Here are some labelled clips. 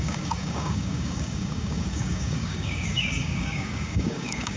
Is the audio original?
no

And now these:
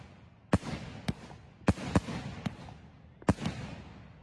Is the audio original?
yes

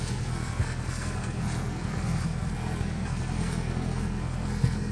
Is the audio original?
no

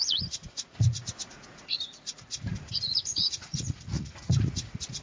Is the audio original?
no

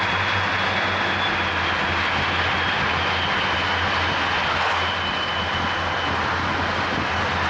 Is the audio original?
yes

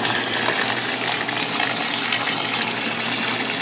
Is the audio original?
yes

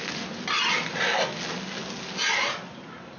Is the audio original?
yes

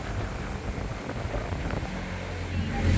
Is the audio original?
yes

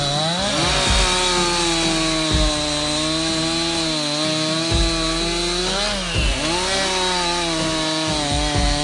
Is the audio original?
yes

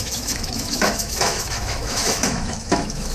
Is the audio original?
no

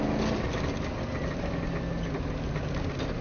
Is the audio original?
yes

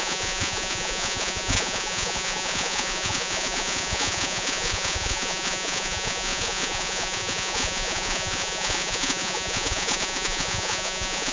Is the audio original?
no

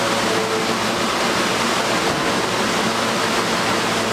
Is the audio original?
yes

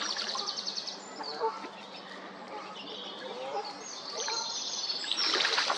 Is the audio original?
yes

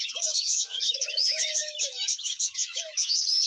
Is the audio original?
no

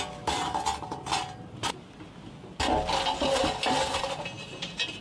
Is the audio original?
yes